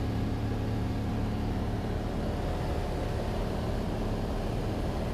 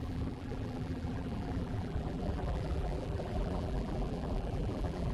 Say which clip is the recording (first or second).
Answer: first